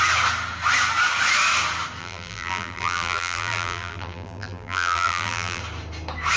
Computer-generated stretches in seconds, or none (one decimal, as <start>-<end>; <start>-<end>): 2.0-5.6